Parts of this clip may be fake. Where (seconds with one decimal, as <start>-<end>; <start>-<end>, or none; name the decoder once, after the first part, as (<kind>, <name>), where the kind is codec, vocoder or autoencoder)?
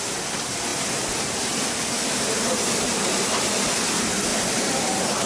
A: 4.3-5.3 (vocoder, BigVGAN v2)